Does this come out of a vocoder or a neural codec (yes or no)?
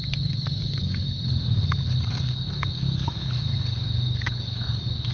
yes